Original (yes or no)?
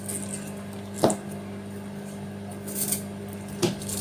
yes